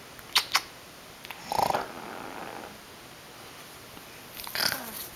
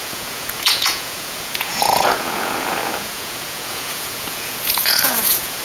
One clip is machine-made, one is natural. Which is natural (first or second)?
first